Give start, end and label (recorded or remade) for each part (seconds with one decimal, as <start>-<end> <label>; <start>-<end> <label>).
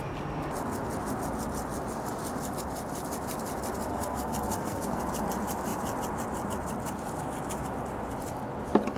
0.0-3.9 recorded; 3.9-5.0 remade; 5.0-9.0 recorded